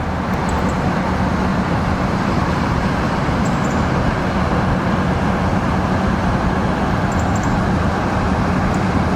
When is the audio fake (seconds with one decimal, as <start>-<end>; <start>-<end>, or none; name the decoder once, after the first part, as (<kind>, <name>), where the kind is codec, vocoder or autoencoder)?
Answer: 1.5-4.2 (vocoder, BigVGAN v2)